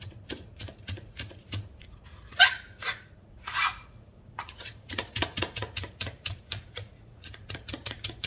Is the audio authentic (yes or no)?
no